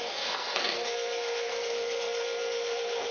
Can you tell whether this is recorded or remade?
remade